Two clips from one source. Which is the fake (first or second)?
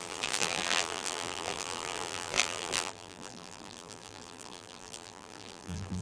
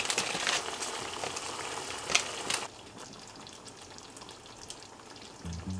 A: first